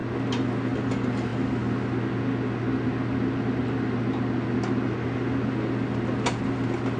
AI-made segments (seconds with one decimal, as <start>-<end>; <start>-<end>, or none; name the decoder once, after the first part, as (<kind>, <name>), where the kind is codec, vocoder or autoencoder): none